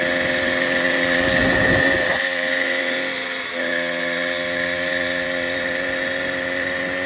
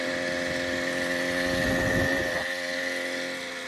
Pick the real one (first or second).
second